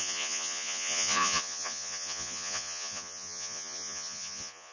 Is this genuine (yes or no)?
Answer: no